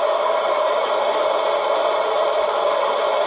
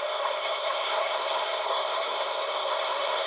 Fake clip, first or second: second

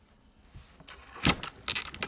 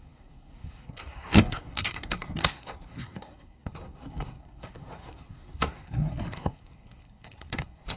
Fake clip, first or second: second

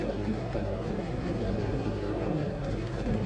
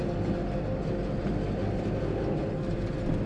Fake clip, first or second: first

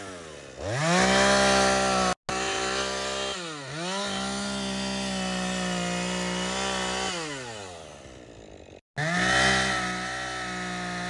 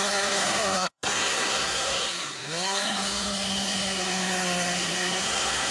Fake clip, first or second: second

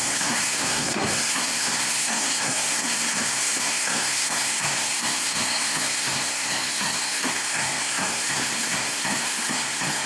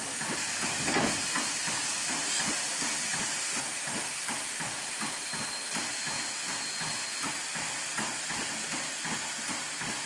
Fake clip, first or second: first